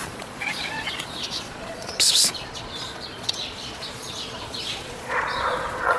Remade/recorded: remade